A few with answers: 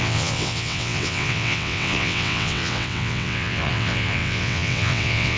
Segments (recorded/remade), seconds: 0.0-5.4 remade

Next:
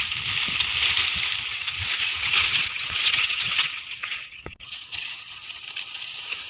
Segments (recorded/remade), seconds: 0.0-1.5 recorded; 1.5-5.4 remade; 5.4-6.5 recorded

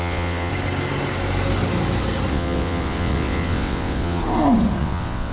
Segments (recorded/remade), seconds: 0.0-0.5 remade; 0.5-2.3 recorded; 2.3-4.2 remade; 4.2-4.8 recorded; 4.8-5.3 remade